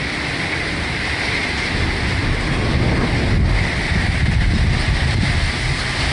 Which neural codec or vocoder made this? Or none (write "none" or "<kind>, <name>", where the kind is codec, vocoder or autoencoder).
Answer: none